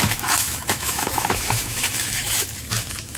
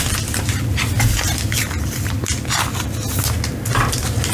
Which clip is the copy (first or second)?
first